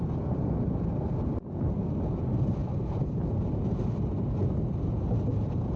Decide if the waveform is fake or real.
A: real